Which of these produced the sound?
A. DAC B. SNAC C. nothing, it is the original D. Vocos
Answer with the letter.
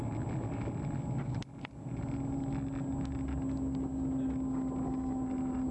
C